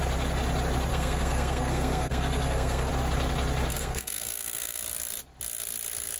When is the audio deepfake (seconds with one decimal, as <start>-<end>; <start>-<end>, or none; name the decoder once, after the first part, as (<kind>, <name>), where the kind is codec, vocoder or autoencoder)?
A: 0.9-2.9 (codec, SNAC); 3.7-4.8

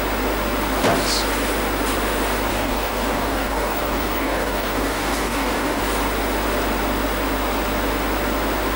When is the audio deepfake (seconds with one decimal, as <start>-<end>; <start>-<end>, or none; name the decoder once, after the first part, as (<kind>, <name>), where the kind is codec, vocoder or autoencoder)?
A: 2.5-5.8 (codec, DAC)

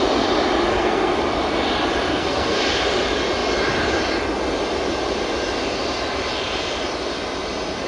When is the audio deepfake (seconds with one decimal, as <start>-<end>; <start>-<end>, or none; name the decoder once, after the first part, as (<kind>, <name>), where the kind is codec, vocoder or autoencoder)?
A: 0.7-1.2 (codec, SNAC); 2.1-2.6

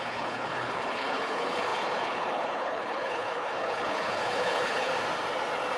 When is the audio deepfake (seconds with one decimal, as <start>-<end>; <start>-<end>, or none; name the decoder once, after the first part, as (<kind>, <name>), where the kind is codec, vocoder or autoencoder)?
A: 0.0-4.9 (codec, HILCodec)

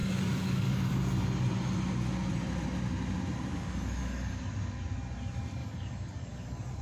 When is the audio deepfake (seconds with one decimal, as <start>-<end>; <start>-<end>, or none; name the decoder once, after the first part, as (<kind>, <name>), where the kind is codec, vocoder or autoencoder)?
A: 0.0-1.0 (codec, DAC); 3.5-4.4; 5.6-6.8